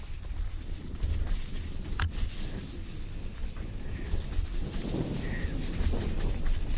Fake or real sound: real